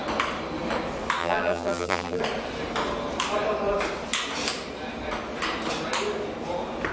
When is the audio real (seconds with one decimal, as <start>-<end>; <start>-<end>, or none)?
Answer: 0.0-1.2; 2.2-6.9

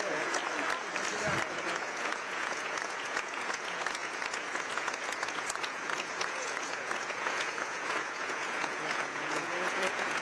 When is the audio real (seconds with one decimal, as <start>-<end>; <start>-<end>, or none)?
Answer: 0.4-1.5

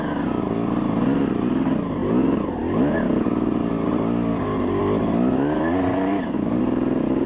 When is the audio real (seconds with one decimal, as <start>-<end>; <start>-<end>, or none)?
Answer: 0.0-4.3; 4.8-6.1; 6.6-7.3

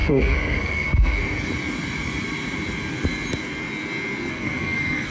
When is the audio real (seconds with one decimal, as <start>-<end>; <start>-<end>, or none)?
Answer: 1.2-4.3

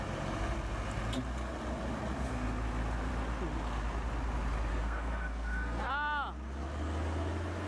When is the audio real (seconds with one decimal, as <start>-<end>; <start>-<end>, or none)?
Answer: 0.0-4.7; 5.9-7.7

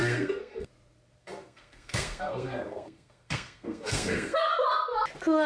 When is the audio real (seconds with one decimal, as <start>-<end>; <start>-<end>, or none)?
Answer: 0.7-1.2; 4.5-5.5

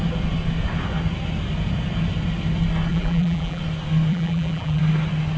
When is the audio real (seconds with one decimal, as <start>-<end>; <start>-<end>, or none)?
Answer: 0.0-2.9; 3.6-4.1; 4.8-5.4

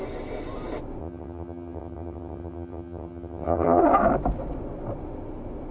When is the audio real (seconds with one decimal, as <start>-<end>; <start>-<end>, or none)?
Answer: 0.0-1.0; 3.8-5.7